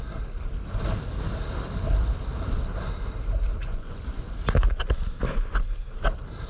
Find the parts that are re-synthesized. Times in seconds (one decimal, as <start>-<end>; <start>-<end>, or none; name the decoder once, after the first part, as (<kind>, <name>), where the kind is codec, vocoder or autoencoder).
3.6-4.2 (vocoder, Vocos)